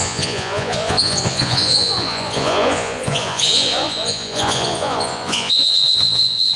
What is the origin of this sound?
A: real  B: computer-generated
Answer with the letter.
B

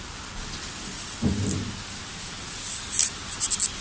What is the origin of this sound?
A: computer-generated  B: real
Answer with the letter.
B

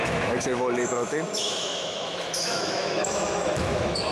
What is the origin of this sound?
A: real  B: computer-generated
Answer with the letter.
B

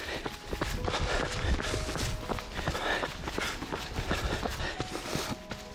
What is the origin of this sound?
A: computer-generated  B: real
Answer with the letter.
B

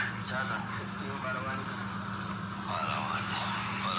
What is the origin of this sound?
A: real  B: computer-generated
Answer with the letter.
A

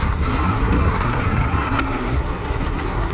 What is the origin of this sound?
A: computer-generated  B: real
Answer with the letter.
A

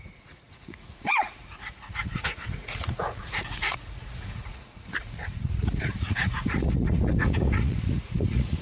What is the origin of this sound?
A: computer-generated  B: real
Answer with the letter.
A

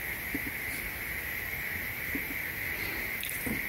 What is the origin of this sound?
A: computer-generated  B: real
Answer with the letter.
B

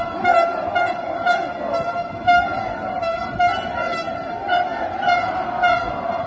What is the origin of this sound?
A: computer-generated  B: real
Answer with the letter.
B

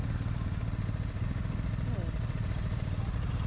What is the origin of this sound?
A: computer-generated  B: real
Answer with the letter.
B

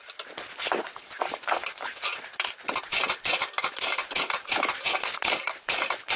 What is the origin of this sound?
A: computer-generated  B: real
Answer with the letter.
A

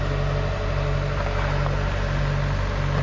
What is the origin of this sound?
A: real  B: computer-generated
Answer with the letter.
A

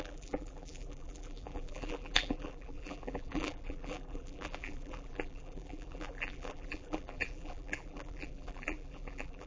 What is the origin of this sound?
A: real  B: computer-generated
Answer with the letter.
B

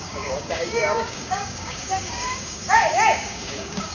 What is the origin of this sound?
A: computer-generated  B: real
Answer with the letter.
A